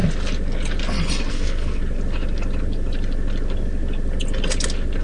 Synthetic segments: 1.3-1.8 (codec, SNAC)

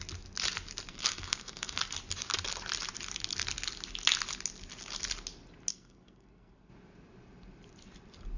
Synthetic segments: 0.9-1.8 (codec, SNAC); 5.7-6.7

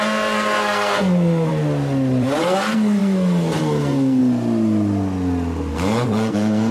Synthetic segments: 0.0-1.5 (codec, SNAC); 2.4-4.2; 5.7-6.7

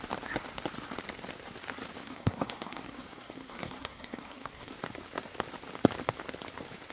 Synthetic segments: 2.0-4.7 (codec, SNAC)

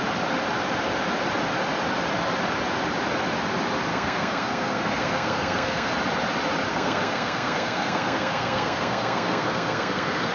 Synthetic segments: 3.9-5.9 (codec, SNAC); 6.7-10.3

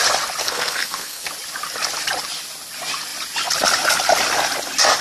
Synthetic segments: 0.4-1.3 (codec, SNAC)

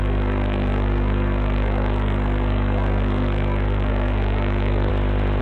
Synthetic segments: 0.0-4.9 (codec, SNAC)